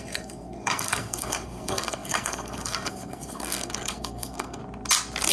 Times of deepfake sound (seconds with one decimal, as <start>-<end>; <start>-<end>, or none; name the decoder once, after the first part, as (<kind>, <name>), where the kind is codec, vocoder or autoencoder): 0.0-4.6 (codec, SNAC)